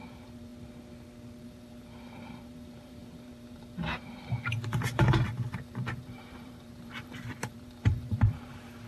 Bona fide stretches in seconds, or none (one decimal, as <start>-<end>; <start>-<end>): 0.5-1.4